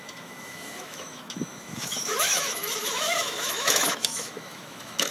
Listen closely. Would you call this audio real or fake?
fake